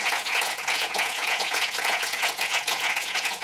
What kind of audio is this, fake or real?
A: fake